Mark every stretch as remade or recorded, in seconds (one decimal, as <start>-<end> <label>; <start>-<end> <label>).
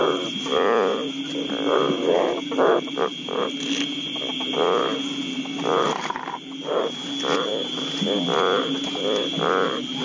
0.0-10.0 recorded